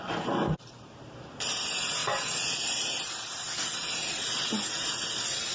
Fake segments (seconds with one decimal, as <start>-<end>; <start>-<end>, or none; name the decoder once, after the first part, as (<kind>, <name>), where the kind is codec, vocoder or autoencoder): none